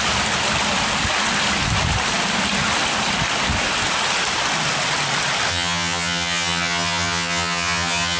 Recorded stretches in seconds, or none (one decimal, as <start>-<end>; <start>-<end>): 0.0-5.5